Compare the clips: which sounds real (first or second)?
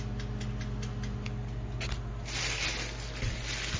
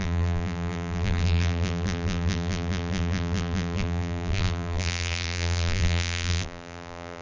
first